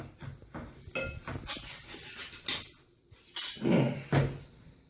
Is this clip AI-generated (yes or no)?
no